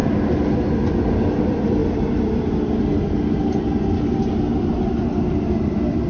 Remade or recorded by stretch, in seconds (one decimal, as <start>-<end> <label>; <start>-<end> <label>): 0.0-0.9 recorded; 0.9-1.8 remade; 1.8-5.5 recorded; 5.5-6.1 remade